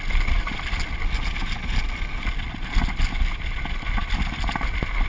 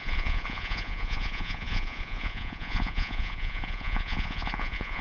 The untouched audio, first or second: first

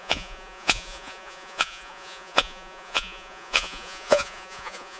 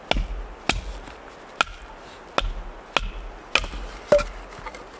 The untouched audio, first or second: second